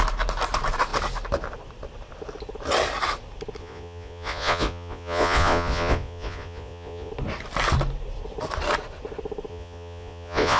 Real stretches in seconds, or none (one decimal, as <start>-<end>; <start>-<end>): 0.0-3.6; 7.1-9.5